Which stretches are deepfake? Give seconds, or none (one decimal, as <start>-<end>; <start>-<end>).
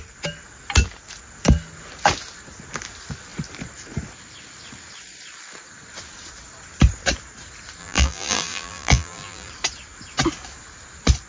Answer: 7.8-9.5